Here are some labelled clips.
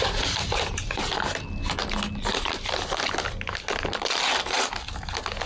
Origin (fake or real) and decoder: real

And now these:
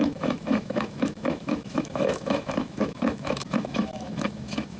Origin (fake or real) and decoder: fake, autoencoder, DAC-VAE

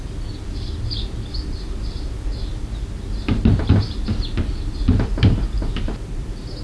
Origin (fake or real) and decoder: real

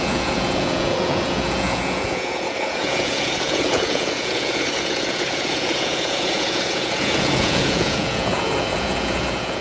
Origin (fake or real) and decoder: fake, vocoder, Vocos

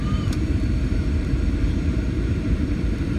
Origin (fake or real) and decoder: fake, vocoder, BigVGAN v2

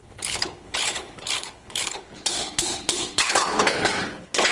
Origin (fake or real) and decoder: fake, codec, HILCodec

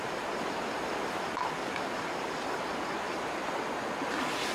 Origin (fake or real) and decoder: real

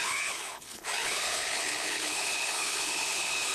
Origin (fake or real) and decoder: fake, codec, HILCodec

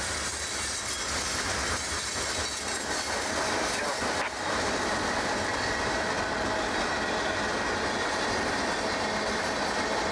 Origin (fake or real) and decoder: real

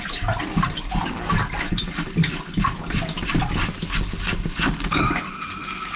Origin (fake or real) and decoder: real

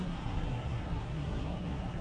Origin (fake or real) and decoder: fake, codec, SNAC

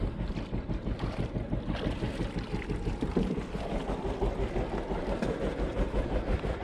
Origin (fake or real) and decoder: real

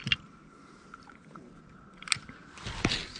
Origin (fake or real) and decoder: real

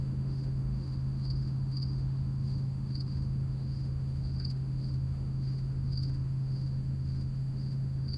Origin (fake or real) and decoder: fake, autoencoder, DAC-VAE